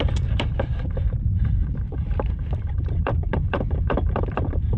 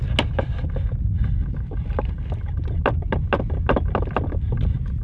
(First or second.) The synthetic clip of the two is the first